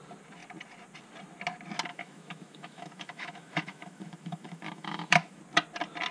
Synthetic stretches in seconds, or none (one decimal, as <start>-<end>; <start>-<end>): 1.9-5.4